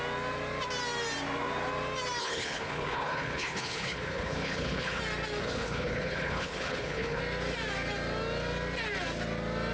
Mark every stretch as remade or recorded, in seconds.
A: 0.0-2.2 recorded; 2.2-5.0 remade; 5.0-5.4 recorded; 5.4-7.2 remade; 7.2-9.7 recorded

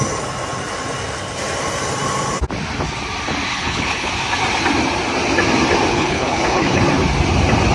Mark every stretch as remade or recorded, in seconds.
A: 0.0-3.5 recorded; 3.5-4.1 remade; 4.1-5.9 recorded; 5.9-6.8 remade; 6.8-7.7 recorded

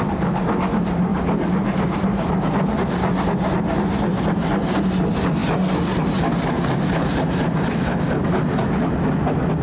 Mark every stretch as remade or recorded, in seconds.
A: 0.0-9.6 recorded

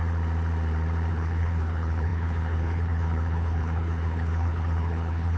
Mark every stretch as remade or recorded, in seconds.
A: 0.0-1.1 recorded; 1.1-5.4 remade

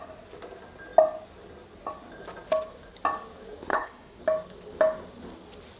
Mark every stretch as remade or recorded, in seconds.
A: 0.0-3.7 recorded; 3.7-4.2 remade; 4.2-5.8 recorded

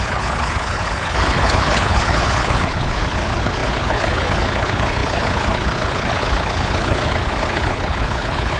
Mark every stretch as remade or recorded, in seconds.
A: 0.0-8.6 remade

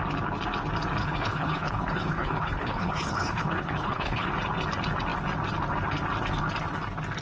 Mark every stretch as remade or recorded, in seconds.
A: 0.0-1.0 recorded; 1.0-4.3 remade; 4.3-7.2 recorded